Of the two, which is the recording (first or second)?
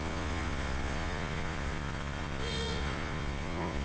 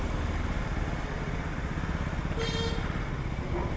second